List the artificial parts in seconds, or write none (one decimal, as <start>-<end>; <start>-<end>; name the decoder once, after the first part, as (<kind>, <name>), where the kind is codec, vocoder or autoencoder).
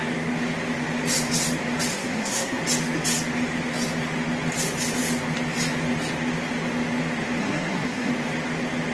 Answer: 1.9-2.6 (codec, SNAC); 7.4-8.1